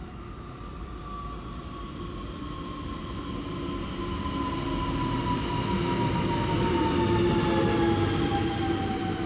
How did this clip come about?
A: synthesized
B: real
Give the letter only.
B